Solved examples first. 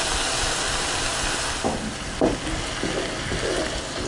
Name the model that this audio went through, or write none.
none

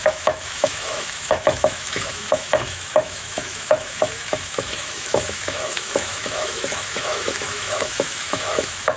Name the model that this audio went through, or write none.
autoencoder, DAC-VAE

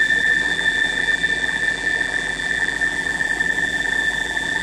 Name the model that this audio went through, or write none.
vocoder, BigVGAN v2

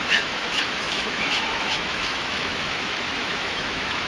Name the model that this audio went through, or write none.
autoencoder, DAC-VAE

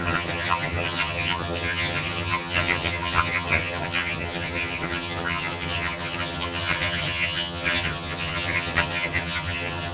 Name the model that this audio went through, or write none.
vocoder, HiFi-GAN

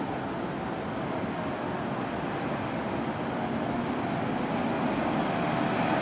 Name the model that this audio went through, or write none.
none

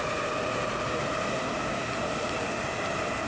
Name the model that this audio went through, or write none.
none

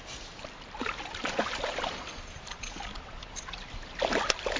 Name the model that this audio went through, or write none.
none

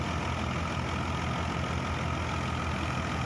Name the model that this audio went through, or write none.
none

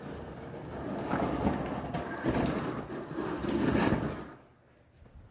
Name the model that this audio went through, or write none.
none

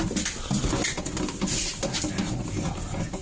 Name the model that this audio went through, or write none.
none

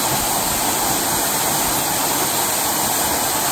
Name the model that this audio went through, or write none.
none